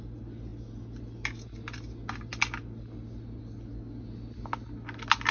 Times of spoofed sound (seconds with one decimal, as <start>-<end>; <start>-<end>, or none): none